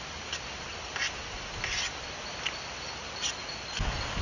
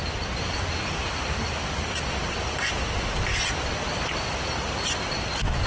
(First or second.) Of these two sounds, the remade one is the second